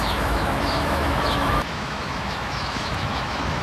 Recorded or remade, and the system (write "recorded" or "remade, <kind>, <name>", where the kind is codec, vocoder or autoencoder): remade, autoencoder, DAC-VAE